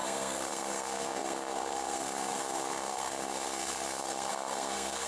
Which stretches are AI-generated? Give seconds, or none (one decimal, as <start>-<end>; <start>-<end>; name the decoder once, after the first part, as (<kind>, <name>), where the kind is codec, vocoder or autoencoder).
0.0-5.1 (codec, SNAC)